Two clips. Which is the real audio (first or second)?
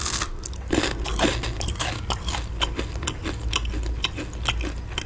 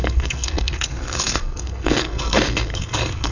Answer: first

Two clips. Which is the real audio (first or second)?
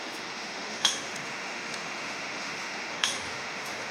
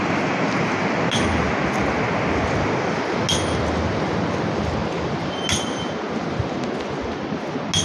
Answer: second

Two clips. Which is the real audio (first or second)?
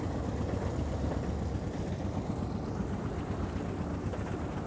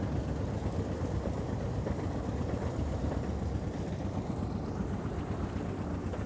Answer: first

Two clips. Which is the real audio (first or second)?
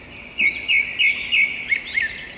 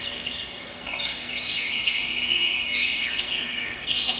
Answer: first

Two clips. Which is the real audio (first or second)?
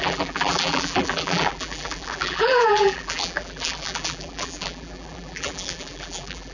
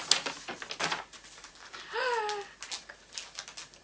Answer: second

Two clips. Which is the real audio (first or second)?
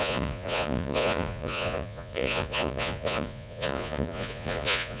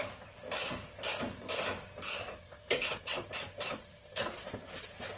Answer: second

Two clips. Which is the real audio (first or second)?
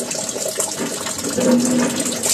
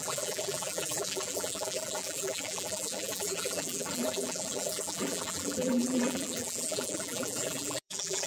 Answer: first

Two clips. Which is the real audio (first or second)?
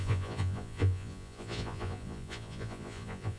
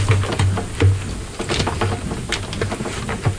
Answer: second